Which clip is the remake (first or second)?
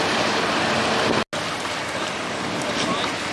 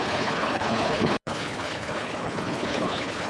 second